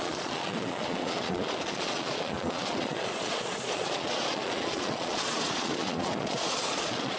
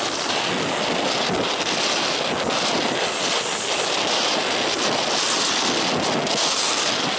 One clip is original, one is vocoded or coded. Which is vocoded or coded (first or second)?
first